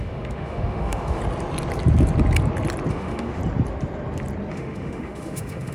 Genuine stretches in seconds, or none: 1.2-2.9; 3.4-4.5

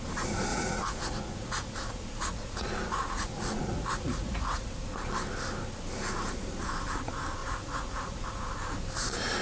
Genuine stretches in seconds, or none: 0.0-0.5; 4.7-7.4; 8.4-9.4

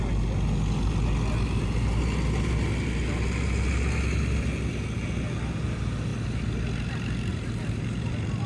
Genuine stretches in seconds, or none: 0.0-7.3; 8.1-8.5

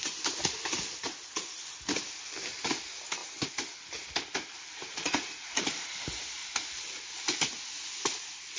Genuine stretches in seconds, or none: 0.0-4.8; 5.5-8.6

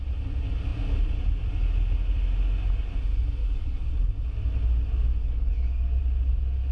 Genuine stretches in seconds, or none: 0.0-3.4; 3.9-5.2; 6.0-6.7

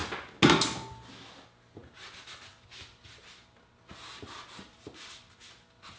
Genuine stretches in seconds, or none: 0.0-6.0

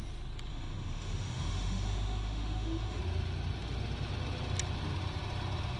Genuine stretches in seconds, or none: 0.0-0.5; 3.0-5.8